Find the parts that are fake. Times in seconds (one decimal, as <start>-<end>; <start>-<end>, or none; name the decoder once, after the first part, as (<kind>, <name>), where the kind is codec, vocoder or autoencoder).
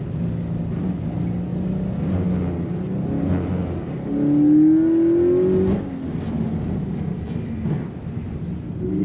none